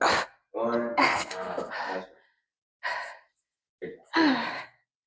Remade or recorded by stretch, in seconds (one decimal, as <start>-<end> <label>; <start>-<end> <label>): 0.0-0.9 recorded; 0.9-1.7 remade; 1.7-5.1 recorded